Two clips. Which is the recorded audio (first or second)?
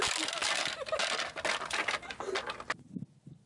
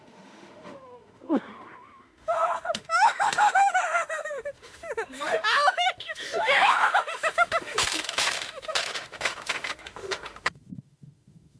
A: first